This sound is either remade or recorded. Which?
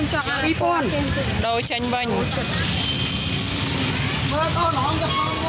recorded